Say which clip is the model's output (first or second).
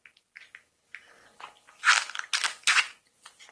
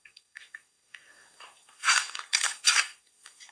second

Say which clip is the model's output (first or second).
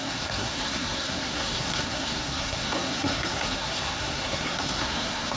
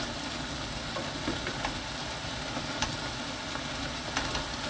first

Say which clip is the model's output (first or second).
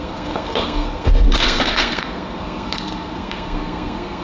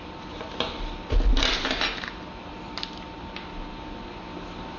first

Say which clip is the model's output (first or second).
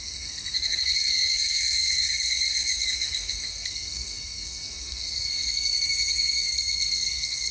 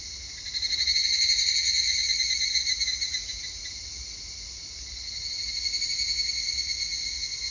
first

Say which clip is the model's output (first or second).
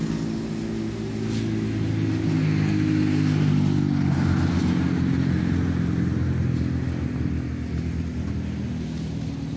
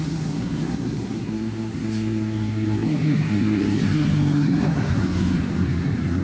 second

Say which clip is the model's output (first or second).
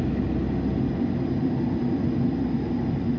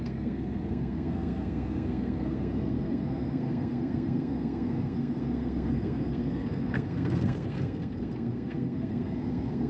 second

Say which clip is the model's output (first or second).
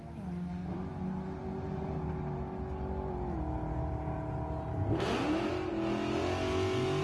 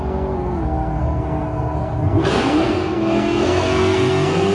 second